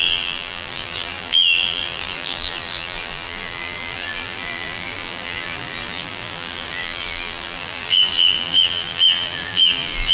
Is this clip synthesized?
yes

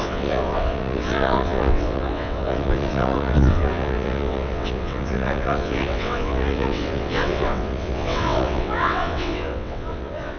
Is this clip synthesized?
yes